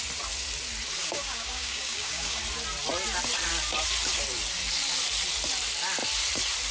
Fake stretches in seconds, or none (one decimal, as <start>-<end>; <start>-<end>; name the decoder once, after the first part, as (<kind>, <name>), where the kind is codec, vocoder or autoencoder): 1.0-2.4 (codec, DAC)